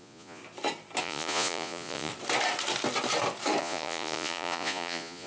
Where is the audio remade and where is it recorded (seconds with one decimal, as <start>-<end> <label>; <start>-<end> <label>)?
0.0-0.4 remade; 0.4-1.0 recorded; 1.0-2.1 remade; 2.1-3.6 recorded; 3.6-5.3 remade